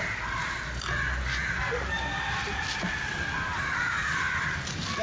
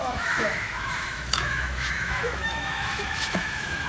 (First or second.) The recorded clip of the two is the first